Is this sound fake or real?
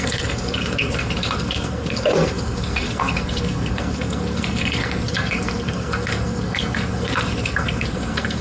fake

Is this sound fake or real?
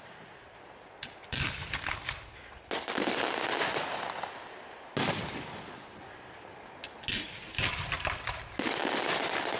real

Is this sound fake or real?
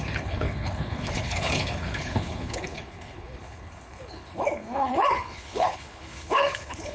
fake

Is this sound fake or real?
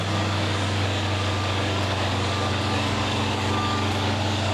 fake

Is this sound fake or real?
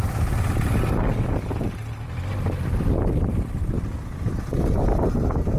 real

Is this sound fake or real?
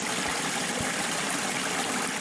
real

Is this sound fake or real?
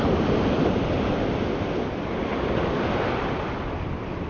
real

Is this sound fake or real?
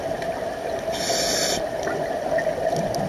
real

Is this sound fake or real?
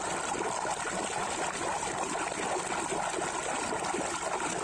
real